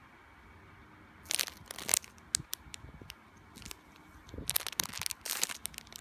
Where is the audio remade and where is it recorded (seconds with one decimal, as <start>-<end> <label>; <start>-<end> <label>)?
0.0-6.0 recorded